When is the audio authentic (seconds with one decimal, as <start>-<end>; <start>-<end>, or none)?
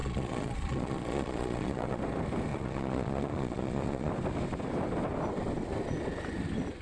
2.0-2.5; 4.1-6.8